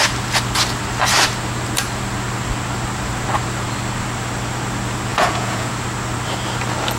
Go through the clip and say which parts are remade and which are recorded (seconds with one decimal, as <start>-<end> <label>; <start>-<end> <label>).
0.0-5.1 recorded; 5.1-5.7 remade; 5.7-7.0 recorded